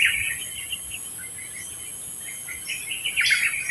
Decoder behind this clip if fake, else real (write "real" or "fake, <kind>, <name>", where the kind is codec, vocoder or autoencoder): real